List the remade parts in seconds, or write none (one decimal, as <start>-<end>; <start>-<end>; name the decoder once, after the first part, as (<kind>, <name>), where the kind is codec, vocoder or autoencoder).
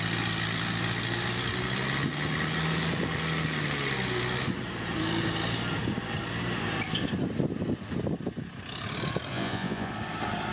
9.3-9.9 (vocoder, Vocos)